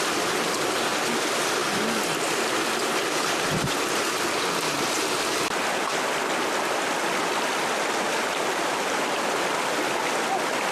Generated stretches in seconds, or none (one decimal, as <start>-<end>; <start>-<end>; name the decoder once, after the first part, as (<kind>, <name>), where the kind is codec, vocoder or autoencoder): none